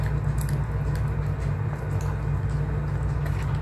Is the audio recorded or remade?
recorded